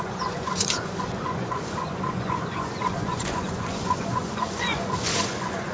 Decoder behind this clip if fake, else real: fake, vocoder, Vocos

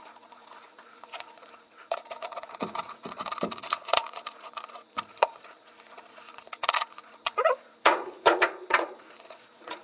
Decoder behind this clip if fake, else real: fake, vocoder, Vocos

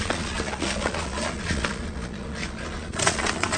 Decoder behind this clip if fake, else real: fake, vocoder, Vocos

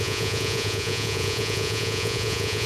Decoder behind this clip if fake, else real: fake, vocoder, Vocos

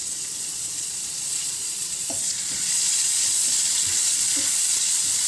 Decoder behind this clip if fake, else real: fake, vocoder, Vocos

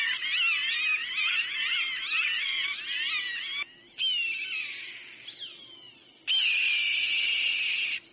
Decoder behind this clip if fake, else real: real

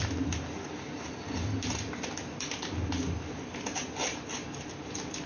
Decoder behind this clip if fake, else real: real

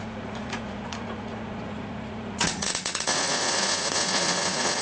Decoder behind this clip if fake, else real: fake, vocoder, Vocos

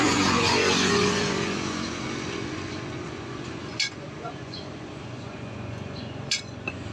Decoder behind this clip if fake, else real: fake, vocoder, Vocos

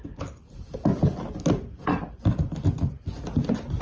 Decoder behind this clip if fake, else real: real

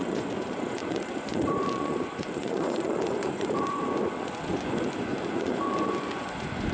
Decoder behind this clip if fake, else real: fake, vocoder, Vocos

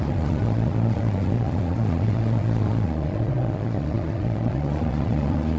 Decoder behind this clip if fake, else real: fake, vocoder, Vocos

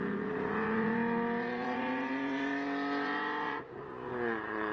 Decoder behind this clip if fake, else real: fake, vocoder, Vocos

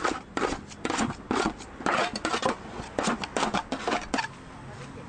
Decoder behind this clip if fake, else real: real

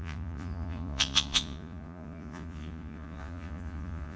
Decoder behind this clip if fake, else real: fake, vocoder, Vocos